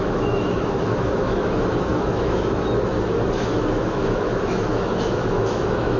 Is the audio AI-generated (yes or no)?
yes